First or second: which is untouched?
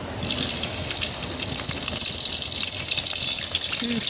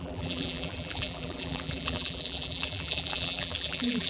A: first